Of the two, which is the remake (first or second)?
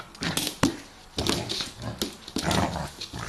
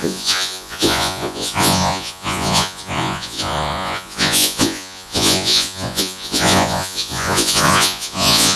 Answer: second